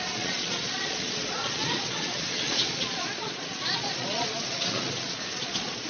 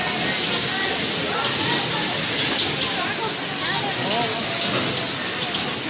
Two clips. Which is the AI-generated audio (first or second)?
first